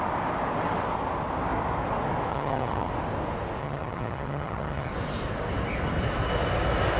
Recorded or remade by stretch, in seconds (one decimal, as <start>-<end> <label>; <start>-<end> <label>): 0.0-2.3 recorded; 2.3-2.9 remade; 2.9-3.6 recorded; 3.6-4.9 remade; 4.9-7.0 recorded